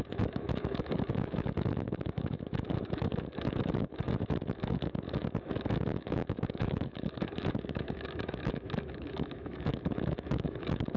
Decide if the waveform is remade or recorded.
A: remade